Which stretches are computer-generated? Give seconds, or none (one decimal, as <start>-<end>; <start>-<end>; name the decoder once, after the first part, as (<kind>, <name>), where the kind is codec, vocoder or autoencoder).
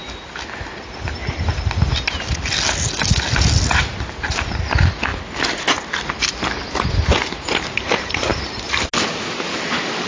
none